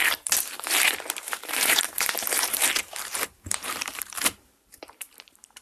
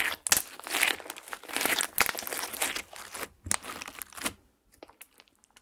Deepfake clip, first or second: first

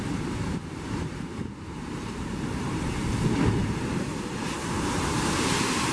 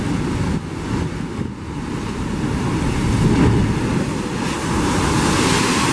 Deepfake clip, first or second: first